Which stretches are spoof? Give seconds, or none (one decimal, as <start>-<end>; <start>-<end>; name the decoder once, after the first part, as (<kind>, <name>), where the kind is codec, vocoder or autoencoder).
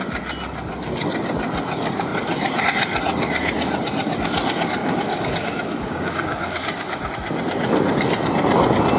4.8-7.1 (codec, DAC)